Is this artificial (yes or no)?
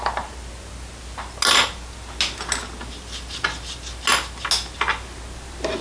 no